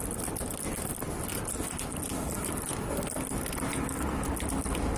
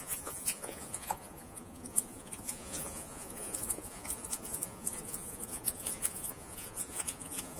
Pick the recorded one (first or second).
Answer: first